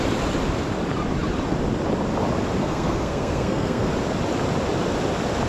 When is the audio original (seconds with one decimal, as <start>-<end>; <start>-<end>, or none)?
0.0-2.6; 3.9-5.5